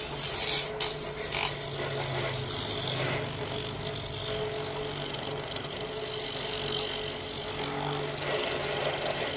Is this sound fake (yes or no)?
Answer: no